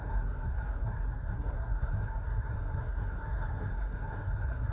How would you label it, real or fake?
fake